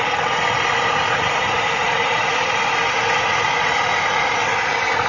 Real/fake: real